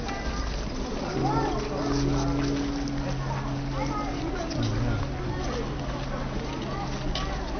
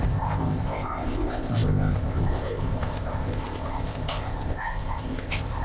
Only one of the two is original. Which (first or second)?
first